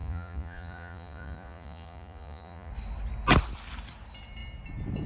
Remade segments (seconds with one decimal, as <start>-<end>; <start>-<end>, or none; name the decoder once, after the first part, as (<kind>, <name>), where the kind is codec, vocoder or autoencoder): 0.0-2.7 (vocoder, Vocos)